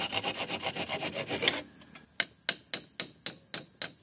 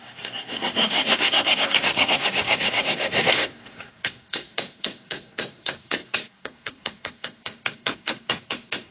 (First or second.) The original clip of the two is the first